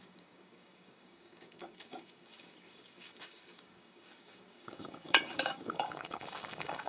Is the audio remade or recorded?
remade